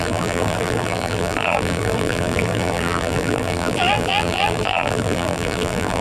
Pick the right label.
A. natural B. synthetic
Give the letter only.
B